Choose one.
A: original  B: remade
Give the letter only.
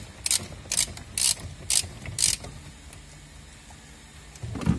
A